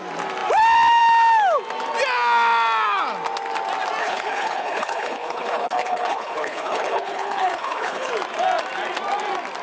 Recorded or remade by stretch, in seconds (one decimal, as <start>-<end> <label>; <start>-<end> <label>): 0.0-4.0 recorded; 4.0-8.1 remade; 8.1-9.6 recorded